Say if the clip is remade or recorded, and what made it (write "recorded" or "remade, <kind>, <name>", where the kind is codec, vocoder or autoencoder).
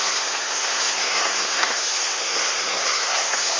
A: remade, codec, SNAC